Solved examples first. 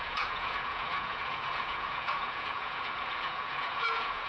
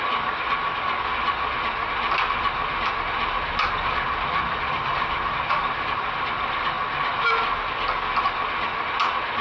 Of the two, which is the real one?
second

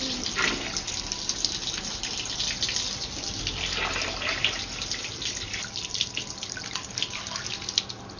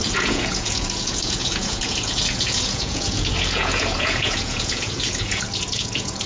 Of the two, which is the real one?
first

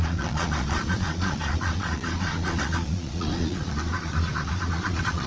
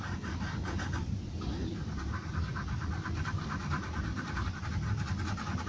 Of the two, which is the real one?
second